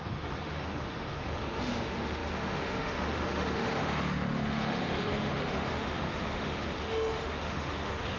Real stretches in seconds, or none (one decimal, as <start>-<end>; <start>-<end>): none